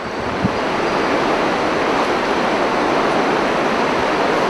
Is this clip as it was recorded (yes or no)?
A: yes